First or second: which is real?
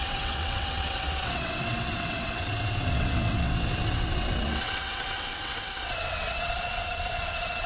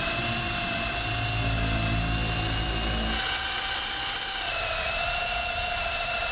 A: second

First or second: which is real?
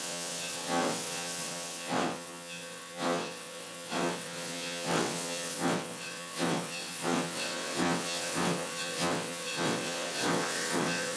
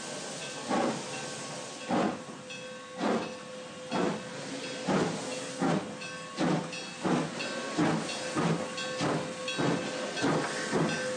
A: second